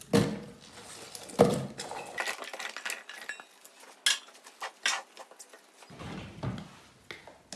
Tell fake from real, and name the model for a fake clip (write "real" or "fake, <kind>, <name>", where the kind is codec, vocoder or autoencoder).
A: real